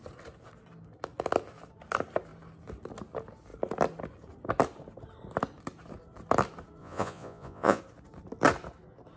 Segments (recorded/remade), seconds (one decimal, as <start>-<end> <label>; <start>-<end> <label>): 0.0-6.8 recorded; 6.8-7.8 remade; 7.8-9.2 recorded